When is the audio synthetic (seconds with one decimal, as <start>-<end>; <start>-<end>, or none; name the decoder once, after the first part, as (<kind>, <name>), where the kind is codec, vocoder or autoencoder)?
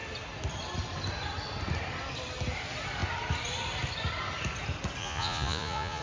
5.0-6.0 (vocoder, Vocos)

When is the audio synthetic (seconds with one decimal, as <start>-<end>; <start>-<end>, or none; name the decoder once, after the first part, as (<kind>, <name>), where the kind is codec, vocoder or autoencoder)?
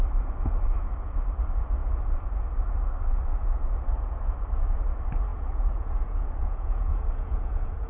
5.3-7.9 (vocoder, Vocos)